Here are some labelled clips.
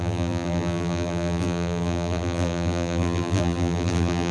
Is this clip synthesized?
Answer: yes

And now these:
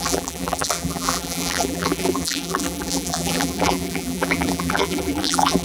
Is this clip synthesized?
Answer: yes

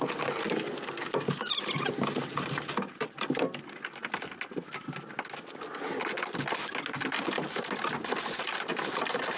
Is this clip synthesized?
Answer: no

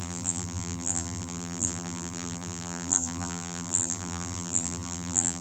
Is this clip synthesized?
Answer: yes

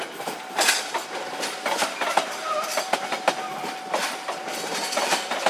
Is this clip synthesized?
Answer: yes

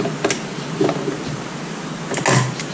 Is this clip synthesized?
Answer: no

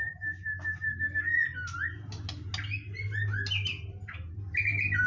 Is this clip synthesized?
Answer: no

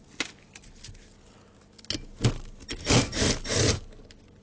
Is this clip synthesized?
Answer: no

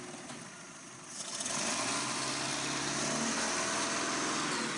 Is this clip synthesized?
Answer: no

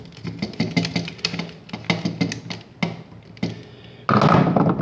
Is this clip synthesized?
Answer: no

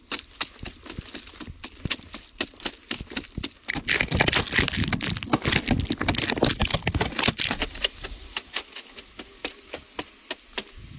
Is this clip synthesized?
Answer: no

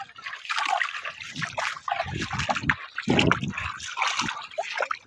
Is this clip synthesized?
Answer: no